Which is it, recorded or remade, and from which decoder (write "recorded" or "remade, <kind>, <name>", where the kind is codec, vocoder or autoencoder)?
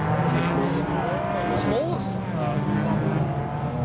recorded